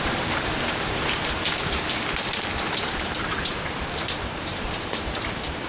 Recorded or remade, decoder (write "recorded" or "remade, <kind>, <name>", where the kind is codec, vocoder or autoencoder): remade, vocoder, BigVGAN v2